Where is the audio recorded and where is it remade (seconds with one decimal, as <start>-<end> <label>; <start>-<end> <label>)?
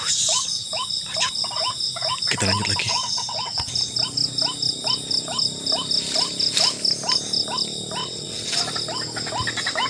0.0-2.9 recorded; 2.9-3.7 remade; 3.7-8.0 recorded; 8.0-8.6 remade; 8.6-9.9 recorded